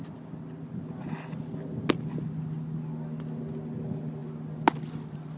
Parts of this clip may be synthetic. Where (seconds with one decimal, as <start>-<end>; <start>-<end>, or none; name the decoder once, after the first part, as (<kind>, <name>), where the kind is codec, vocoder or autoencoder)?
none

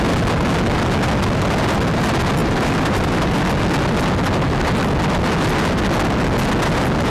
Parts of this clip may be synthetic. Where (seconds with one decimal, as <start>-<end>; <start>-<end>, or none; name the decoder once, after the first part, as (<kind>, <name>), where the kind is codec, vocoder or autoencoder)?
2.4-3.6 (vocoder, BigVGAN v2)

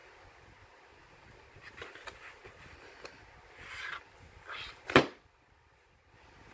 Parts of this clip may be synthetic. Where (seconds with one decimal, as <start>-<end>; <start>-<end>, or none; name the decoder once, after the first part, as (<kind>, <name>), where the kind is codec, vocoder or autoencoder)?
none

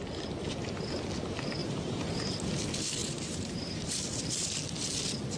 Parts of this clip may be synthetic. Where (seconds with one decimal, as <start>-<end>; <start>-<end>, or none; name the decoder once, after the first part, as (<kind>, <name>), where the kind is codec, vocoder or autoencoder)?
1.6-2.5 (vocoder, BigVGAN v2); 3.0-4.0